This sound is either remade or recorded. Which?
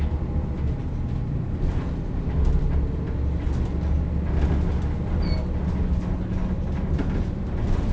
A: recorded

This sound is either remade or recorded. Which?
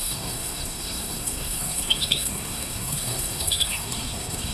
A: remade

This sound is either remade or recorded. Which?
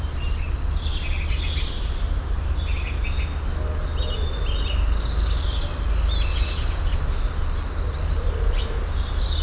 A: recorded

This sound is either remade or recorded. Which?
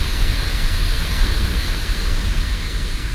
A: remade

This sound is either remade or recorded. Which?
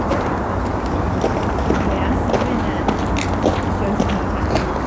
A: recorded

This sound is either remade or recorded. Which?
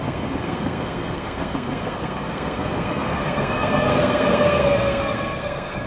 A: remade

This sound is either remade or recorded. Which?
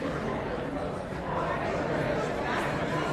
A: recorded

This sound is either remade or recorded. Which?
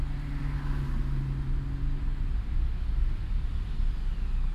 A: recorded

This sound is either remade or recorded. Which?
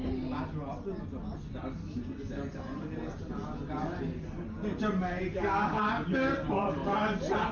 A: recorded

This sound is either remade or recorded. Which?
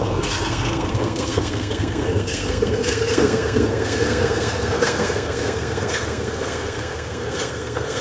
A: remade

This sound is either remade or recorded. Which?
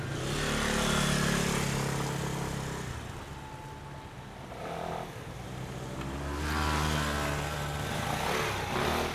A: recorded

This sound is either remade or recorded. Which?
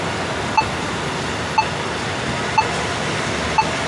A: recorded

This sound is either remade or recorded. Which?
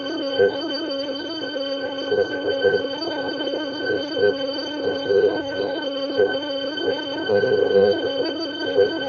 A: remade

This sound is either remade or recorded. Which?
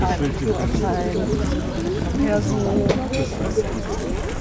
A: recorded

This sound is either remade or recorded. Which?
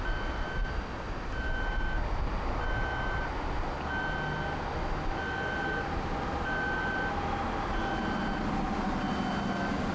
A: recorded